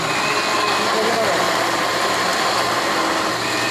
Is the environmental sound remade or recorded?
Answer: recorded